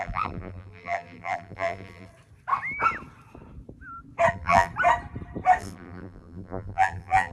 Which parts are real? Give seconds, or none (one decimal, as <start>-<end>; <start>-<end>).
2.1-4.3; 4.7-5.6